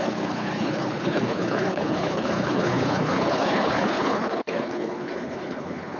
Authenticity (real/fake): fake